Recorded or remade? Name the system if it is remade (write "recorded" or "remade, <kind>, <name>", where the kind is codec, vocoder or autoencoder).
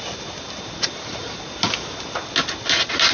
recorded